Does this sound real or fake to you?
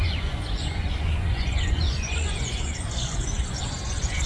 fake